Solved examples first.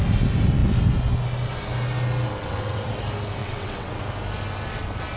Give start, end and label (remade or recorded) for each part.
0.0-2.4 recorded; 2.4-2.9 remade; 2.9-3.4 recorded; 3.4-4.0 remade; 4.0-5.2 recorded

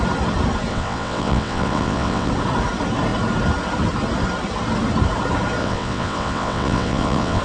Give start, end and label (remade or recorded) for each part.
0.0-0.7 recorded; 0.7-2.3 remade; 2.3-5.6 recorded; 5.6-7.4 remade